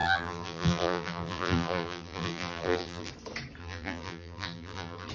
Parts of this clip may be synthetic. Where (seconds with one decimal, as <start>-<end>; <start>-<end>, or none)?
0.0-3.1; 3.6-5.1